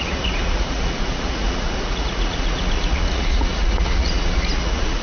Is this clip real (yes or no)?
no